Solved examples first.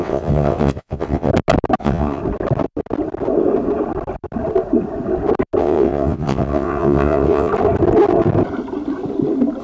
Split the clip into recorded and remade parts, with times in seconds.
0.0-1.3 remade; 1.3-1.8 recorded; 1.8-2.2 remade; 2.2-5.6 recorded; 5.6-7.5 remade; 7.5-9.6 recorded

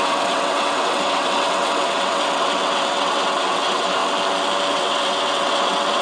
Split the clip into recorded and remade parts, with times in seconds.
0.0-4.0 remade; 4.0-4.7 recorded; 4.7-6.0 remade

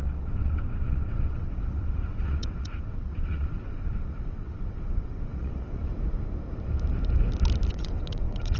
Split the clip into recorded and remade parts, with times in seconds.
0.0-5.9 remade; 5.9-7.7 recorded; 7.7-8.6 remade

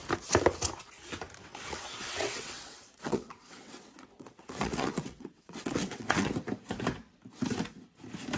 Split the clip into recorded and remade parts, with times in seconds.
0.0-1.4 recorded; 1.4-6.3 remade; 6.3-8.4 recorded

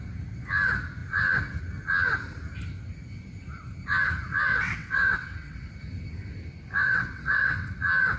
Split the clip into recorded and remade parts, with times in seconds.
0.0-4.5 recorded; 4.5-5.7 remade; 5.7-6.8 recorded; 6.8-7.7 remade; 7.7-8.2 recorded

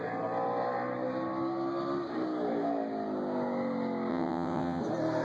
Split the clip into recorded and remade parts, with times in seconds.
0.0-4.1 recorded; 4.1-4.8 remade; 4.8-5.2 recorded

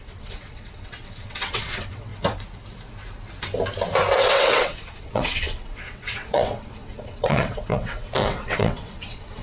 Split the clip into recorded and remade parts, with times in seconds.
0.0-2.1 remade; 2.1-4.3 recorded; 4.3-9.4 remade

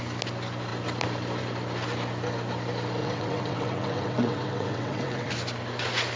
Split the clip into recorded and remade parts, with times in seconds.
0.0-3.0 recorded; 3.0-5.3 remade; 5.3-6.2 recorded